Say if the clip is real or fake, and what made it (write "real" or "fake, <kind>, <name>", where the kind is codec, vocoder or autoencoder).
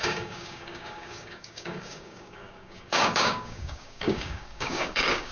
fake, codec, DAC